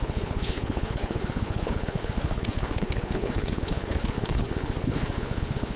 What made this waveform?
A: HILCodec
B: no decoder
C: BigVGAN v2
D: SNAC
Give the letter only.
A